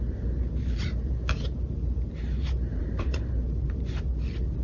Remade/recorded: remade